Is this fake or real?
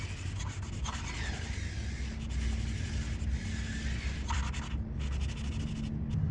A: real